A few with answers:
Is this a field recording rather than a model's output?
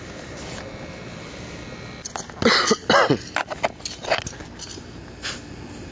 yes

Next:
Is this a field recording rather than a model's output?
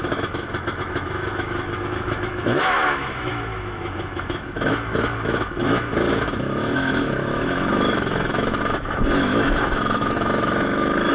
no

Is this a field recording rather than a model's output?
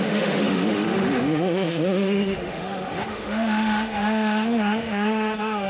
no